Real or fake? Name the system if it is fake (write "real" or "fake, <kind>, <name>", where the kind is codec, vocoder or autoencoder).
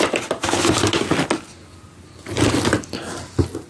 real